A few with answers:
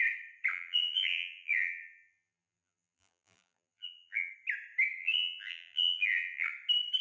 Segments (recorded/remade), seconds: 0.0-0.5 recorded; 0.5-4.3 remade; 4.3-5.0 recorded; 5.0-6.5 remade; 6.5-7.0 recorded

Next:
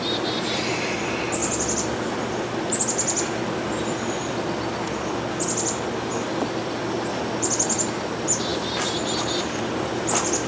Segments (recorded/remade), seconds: 0.0-10.5 recorded

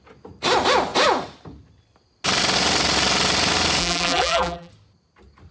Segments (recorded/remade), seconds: 0.0-3.8 recorded; 3.8-4.7 remade; 4.7-5.5 recorded

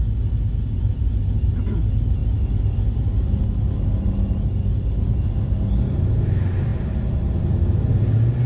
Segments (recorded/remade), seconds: 0.0-6.7 recorded; 6.7-7.9 remade; 7.9-8.5 recorded

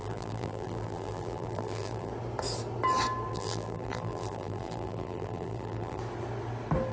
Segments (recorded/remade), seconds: 0.0-2.1 remade; 2.1-3.3 recorded; 3.3-6.0 remade; 6.0-6.9 recorded

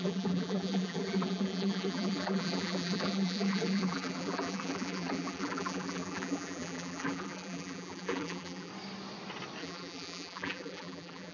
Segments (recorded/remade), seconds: 0.0-8.7 remade; 8.7-9.6 recorded; 9.6-11.3 remade